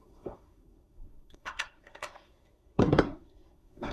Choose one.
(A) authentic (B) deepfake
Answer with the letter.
B